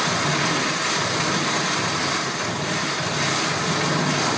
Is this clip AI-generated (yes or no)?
yes